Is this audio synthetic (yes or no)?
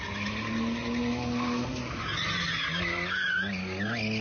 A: no